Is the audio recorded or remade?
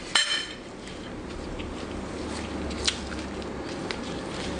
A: recorded